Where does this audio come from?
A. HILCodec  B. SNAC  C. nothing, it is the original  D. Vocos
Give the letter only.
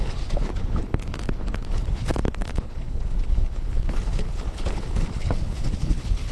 A